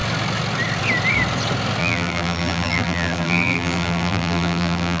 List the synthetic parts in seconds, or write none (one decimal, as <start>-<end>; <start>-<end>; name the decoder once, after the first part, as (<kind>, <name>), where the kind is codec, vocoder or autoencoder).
1.8-5.0 (vocoder, BigVGAN v2)